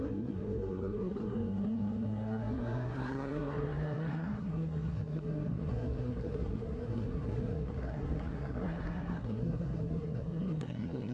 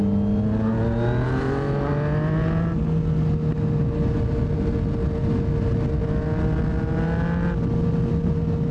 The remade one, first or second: first